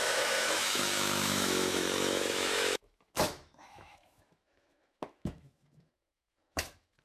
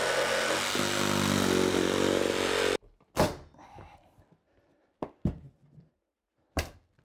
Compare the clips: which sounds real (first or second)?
second